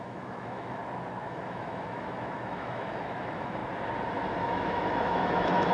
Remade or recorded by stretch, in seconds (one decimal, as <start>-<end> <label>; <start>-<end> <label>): 0.0-0.8 remade; 0.8-1.3 recorded; 1.3-3.6 remade; 3.6-4.4 recorded; 4.4-5.7 remade

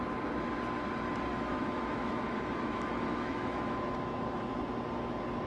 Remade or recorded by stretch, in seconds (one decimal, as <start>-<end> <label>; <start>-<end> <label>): 0.0-1.3 recorded; 1.3-4.6 remade; 4.6-5.5 recorded

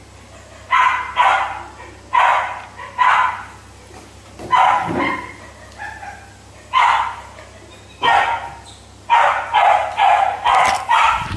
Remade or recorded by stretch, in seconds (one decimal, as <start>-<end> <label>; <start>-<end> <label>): 0.0-11.4 recorded

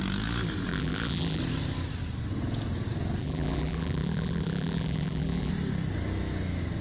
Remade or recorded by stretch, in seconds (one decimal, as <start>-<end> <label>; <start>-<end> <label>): 0.0-0.7 recorded; 0.7-1.4 remade; 1.4-3.2 recorded; 3.2-5.5 remade; 5.5-6.8 recorded

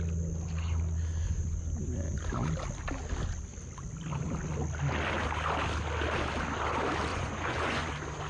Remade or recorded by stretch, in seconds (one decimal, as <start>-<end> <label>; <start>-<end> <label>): 0.0-7.1 recorded; 7.1-7.9 remade; 7.9-8.3 recorded

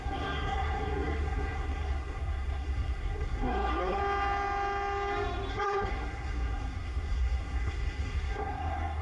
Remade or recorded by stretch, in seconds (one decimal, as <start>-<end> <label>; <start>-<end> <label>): 0.0-4.0 remade; 4.0-5.5 recorded; 5.5-9.0 remade